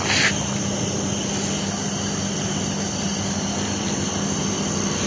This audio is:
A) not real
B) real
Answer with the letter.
A